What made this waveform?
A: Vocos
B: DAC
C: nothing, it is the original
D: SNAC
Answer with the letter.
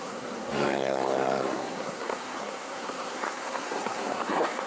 D